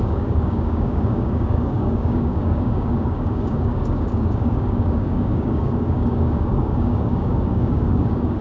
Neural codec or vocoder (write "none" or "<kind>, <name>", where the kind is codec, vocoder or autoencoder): codec, DAC